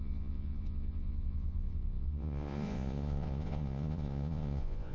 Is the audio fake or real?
fake